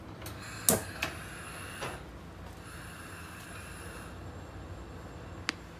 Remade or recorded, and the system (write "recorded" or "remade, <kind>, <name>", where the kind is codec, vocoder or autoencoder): recorded